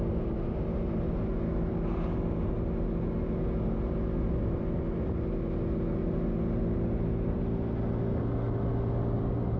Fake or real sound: real